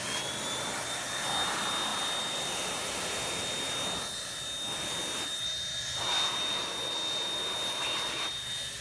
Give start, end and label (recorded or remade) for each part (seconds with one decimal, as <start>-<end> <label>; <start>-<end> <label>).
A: 0.0-8.8 recorded